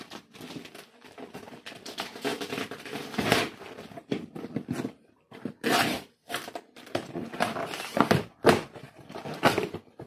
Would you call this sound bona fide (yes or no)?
no